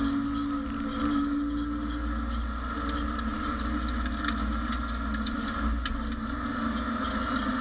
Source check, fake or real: real